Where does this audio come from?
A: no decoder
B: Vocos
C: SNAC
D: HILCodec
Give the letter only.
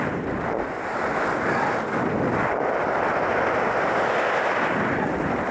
A